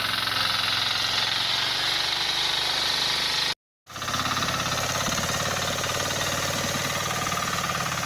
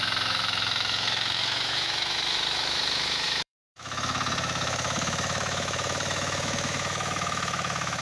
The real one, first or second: first